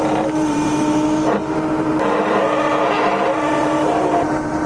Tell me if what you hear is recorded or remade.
remade